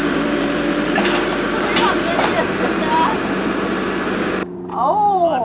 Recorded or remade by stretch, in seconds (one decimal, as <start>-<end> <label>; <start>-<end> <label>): 0.0-3.2 remade; 3.2-4.4 recorded; 4.4-5.4 remade